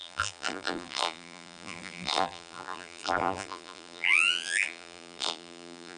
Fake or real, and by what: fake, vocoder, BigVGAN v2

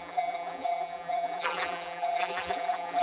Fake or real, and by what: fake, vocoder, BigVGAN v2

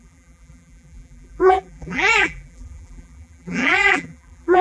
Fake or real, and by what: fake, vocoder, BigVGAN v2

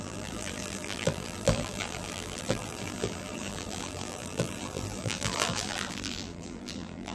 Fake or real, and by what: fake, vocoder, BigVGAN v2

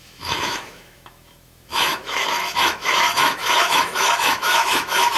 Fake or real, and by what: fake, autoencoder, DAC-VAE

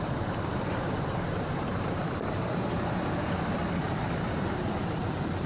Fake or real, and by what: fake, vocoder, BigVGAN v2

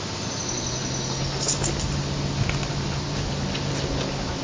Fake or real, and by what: real